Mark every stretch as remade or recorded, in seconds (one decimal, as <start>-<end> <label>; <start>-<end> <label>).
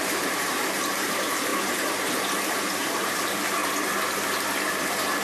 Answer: 0.0-1.5 remade; 1.5-2.5 recorded; 2.5-3.6 remade; 3.6-5.2 recorded